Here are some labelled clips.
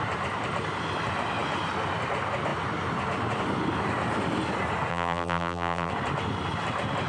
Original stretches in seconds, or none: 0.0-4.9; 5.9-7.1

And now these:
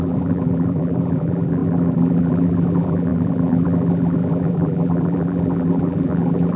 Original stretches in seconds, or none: none